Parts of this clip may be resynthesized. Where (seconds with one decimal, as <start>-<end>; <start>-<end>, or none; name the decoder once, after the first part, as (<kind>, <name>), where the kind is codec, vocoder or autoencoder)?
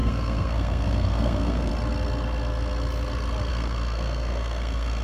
0.0-1.7 (codec, SNAC); 3.5-5.0